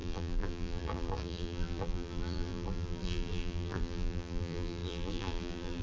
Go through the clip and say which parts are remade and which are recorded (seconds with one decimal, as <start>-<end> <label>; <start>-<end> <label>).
0.0-5.8 remade